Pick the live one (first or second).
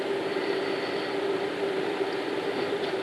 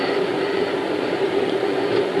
first